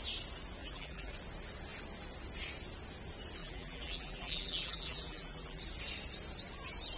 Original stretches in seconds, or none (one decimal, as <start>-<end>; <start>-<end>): 0.0-0.6; 1.1-3.4; 5.6-7.0